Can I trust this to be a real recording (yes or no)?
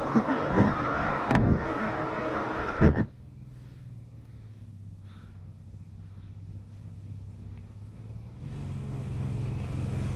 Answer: no